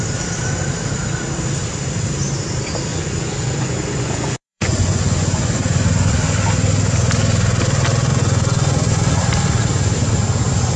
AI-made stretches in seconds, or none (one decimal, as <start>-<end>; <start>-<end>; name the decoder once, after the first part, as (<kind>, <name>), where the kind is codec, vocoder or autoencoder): 2.9-6.1 (vocoder, Vocos); 8.1-9.2